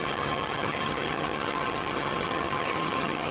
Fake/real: fake